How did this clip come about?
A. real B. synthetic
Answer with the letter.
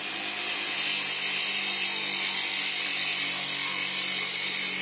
A